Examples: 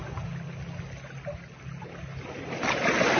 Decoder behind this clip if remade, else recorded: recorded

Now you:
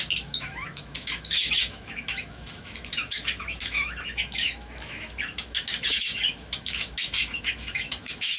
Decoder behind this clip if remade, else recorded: remade, autoencoder, DAC-VAE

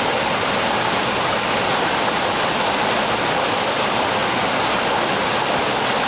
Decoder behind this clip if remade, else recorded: recorded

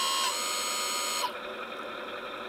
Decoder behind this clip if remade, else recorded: recorded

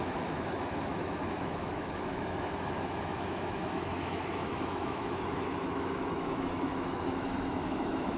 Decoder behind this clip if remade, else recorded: remade, autoencoder, DAC-VAE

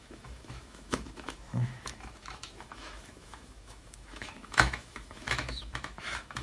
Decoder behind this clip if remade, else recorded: remade, autoencoder, DAC-VAE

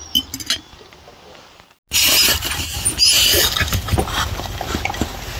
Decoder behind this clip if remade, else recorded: recorded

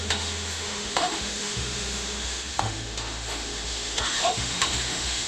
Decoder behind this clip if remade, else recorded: remade, autoencoder, DAC-VAE